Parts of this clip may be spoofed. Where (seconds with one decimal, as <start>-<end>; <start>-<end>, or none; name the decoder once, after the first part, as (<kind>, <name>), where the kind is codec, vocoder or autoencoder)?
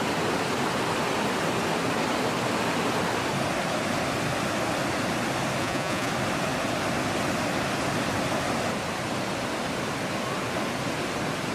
5.6-6.1 (vocoder, Vocos)